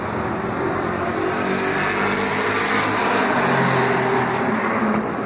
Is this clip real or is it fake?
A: real